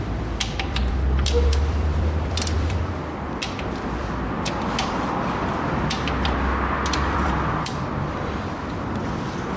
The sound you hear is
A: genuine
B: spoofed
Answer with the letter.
B